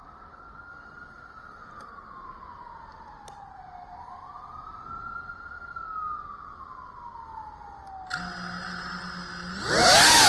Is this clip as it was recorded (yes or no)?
yes